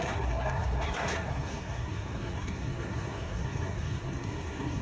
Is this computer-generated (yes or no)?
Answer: yes